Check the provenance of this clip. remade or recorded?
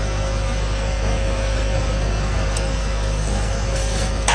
remade